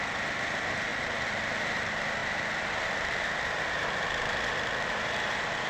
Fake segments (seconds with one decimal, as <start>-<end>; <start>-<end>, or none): 0.0-5.7